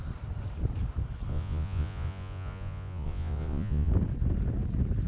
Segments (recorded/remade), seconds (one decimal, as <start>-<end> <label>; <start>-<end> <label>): 0.0-1.3 recorded; 1.3-3.9 remade; 3.9-5.1 recorded